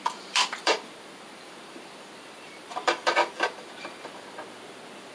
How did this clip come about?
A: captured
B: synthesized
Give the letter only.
B